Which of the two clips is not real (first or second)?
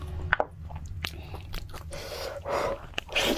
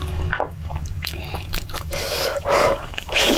second